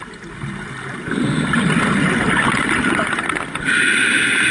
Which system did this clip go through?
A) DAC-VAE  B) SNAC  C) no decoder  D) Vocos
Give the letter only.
C